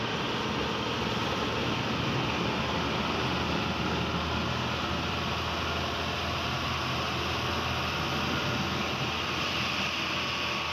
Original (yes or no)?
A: yes